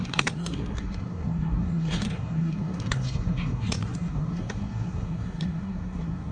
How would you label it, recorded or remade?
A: remade